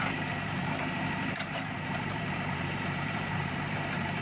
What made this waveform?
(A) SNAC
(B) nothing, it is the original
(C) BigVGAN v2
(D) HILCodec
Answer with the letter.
C